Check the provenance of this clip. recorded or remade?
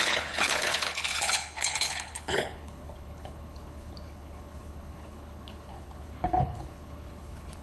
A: remade